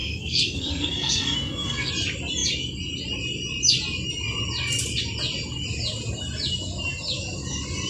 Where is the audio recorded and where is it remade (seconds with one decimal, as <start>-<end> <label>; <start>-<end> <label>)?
0.0-1.9 remade; 1.9-7.9 recorded